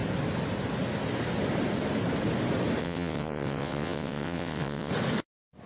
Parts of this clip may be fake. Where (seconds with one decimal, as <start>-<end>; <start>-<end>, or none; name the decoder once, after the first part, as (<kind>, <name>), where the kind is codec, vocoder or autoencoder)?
2.8-4.9 (vocoder, WaveNeXt)